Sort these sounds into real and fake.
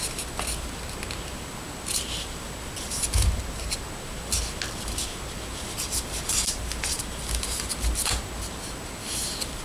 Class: real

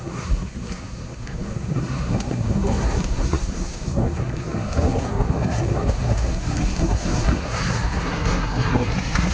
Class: fake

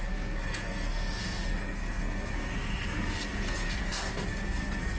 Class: fake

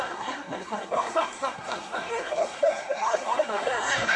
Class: fake